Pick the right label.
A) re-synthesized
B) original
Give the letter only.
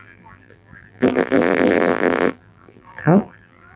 A